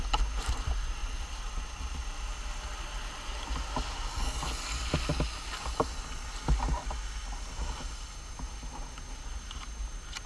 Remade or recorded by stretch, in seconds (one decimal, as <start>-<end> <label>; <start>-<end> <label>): 0.0-10.3 recorded

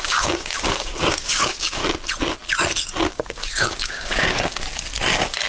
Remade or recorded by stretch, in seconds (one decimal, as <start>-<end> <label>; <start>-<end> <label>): 0.0-1.8 remade; 1.8-3.1 recorded; 3.1-4.5 remade; 4.5-5.5 recorded

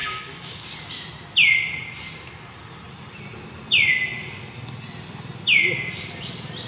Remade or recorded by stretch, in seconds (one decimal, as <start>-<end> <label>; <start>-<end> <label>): 0.0-0.9 remade; 0.9-6.7 recorded